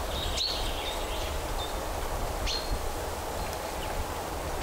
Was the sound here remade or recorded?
recorded